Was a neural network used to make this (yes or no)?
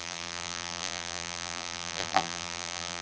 yes